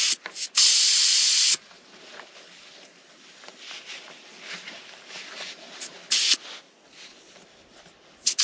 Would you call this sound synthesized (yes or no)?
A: no